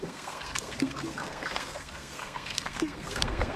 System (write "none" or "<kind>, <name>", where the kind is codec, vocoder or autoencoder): codec, SNAC